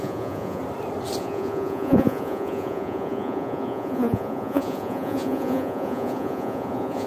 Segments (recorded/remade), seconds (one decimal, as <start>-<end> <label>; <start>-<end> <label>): 0.0-0.6 remade; 0.6-1.2 recorded; 1.2-7.1 remade